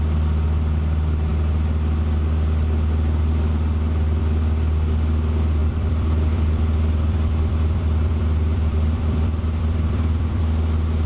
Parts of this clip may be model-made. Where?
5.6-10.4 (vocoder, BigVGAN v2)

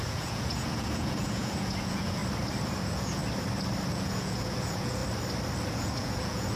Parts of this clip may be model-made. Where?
0.0-2.2 (vocoder, Vocos); 2.8-3.2; 3.9-5.0; 5.7-6.6

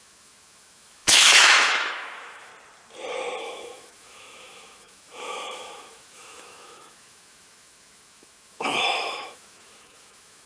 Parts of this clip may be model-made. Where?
0.0-2.5 (autoencoder, DAC-VAE); 3.4-10.5

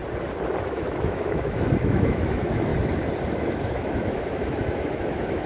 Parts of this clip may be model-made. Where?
0.6-2.7 (autoencoder, DAC-VAE); 3.3-5.5